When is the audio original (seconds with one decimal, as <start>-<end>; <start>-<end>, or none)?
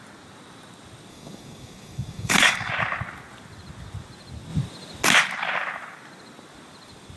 0.0-1.1; 2.7-7.2